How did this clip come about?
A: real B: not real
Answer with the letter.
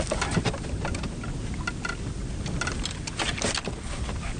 A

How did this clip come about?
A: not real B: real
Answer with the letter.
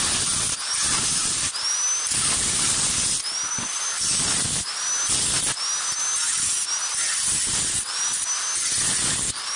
B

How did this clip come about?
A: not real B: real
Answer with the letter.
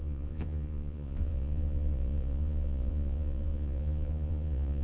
A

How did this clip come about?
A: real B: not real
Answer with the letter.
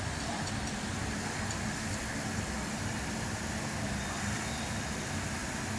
B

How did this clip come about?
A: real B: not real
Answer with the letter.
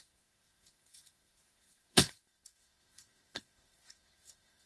B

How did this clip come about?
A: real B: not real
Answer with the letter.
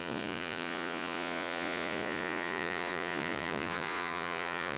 B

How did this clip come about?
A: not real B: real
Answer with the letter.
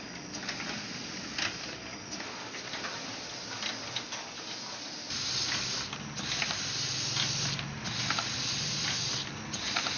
B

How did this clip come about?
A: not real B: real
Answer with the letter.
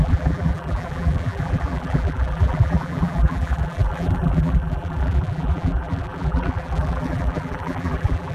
A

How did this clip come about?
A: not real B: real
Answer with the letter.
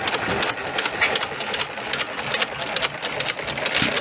B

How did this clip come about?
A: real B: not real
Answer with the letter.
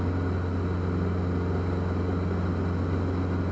A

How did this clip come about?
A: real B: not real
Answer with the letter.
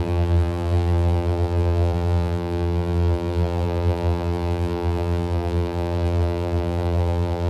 B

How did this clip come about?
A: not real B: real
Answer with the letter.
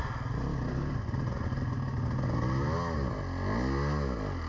B